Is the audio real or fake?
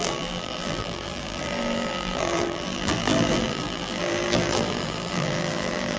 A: fake